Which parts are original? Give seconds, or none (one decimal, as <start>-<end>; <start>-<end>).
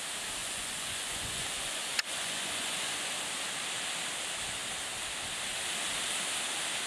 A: 0.0-0.4; 3.1-6.9